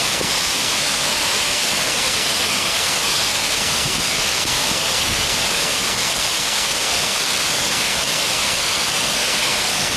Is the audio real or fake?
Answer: fake